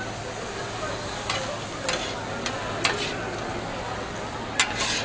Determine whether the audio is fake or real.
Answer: real